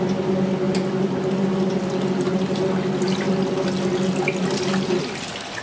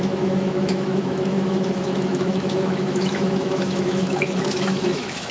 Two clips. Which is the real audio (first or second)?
first